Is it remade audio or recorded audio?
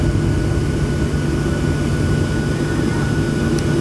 recorded